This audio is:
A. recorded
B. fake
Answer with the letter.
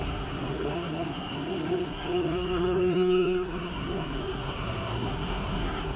B